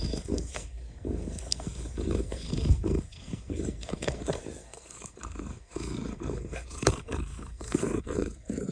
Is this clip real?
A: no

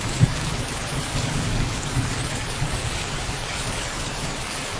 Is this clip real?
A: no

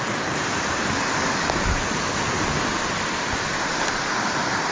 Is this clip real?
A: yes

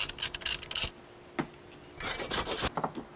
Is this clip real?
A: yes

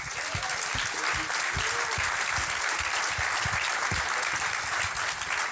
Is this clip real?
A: yes